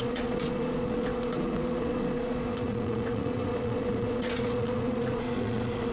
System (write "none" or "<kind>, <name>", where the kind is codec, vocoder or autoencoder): vocoder, Vocos